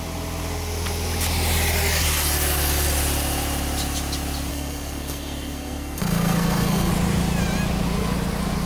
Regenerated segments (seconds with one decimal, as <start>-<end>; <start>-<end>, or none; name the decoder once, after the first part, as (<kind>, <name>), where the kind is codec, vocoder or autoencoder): 4.5-6.9 (codec, SNAC)